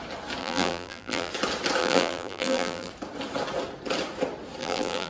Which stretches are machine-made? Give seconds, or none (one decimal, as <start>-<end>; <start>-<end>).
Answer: 0.4-1.3; 1.8-2.9; 4.6-5.1